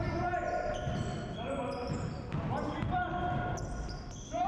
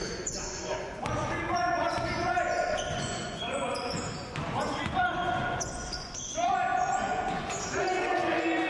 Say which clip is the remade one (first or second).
second